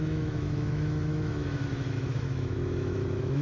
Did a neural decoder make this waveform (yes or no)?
yes